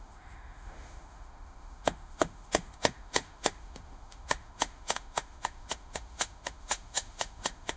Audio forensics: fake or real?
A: fake